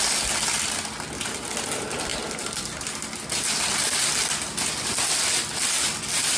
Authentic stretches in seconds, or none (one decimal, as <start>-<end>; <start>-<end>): 0.0-6.4